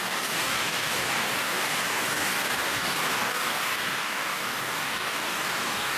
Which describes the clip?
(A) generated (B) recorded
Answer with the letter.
A